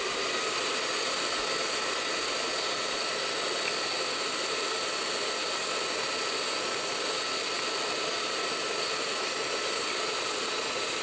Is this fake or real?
real